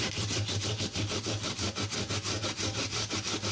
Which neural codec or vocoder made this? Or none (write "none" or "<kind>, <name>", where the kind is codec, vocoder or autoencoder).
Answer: none